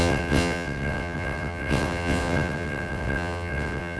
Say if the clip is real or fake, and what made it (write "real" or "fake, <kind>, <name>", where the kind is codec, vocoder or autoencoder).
fake, vocoder, WaveNeXt